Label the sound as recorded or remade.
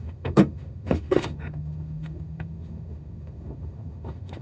remade